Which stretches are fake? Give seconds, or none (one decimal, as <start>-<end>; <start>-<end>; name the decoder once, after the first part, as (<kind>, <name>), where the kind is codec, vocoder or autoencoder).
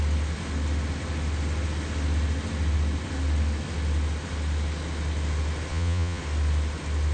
5.7-6.2 (vocoder, Vocos)